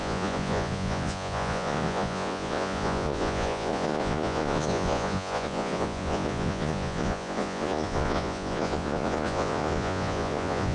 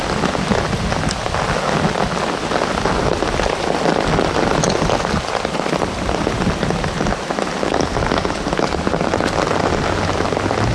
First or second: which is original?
second